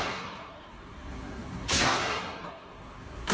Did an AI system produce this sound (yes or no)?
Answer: yes